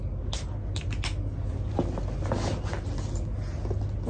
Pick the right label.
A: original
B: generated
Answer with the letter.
A